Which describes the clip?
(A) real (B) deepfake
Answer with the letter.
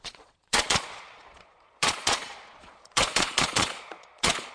B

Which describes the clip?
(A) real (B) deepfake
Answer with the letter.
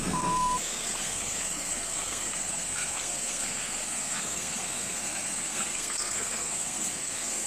B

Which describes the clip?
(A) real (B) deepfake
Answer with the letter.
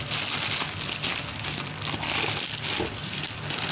A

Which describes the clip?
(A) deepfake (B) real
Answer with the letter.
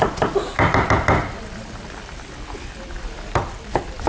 A